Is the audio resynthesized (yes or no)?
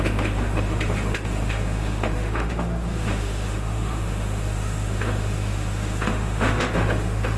yes